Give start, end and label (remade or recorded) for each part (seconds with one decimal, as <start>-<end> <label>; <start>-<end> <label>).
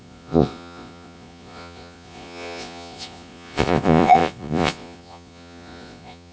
0.0-6.3 remade